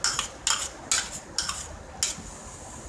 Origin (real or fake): real